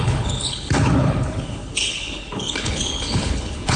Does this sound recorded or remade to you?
remade